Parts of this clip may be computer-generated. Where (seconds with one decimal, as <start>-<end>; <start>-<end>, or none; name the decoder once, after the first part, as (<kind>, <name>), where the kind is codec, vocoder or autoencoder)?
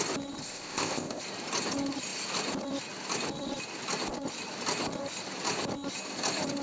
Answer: 0.4-1.2 (codec, ZipCodec)